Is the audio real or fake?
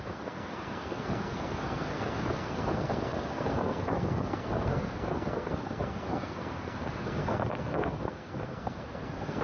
fake